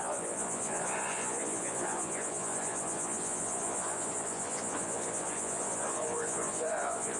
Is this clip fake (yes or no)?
yes